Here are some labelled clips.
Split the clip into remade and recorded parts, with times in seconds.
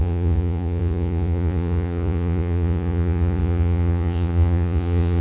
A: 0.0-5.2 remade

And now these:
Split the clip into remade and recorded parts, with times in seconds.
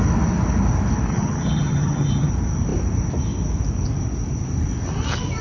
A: 0.0-1.1 recorded; 1.1-2.3 remade; 2.3-5.4 recorded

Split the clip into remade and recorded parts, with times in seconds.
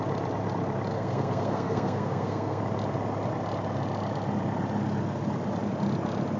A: 0.0-0.9 recorded; 0.9-2.6 remade; 2.6-6.4 recorded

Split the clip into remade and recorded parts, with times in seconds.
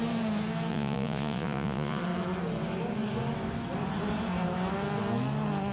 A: 0.0-0.7 recorded; 0.7-2.0 remade; 2.0-5.7 recorded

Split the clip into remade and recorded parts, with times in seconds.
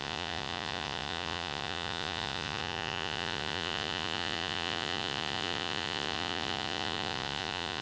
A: 0.0-7.8 remade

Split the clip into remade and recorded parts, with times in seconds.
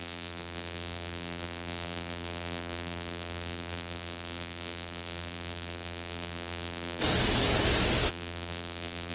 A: 0.0-7.0 remade; 7.0-8.1 recorded; 8.1-9.1 remade